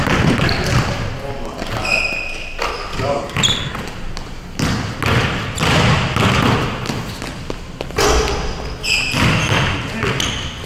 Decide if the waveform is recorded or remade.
recorded